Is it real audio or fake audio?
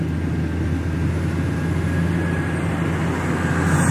real